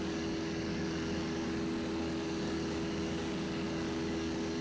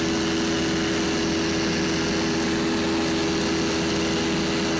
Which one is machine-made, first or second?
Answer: first